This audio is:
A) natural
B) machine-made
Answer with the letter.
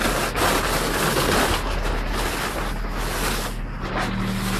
A